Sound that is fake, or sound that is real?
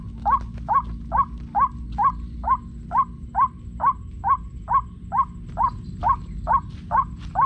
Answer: real